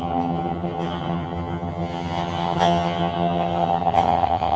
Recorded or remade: remade